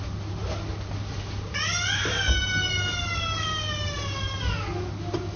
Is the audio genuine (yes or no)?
yes